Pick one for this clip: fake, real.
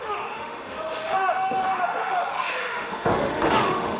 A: fake